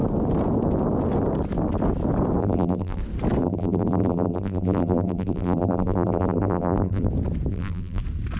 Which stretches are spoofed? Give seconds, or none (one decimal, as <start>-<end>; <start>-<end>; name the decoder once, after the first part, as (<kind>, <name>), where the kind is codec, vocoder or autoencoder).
2.4-3.0 (vocoder, BigVGAN v2); 3.4-7.1; 7.5-8.0